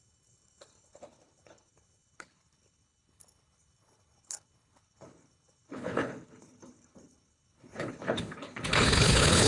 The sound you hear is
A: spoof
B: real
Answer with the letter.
A